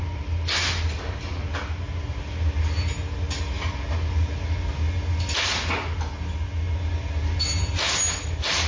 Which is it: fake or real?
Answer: real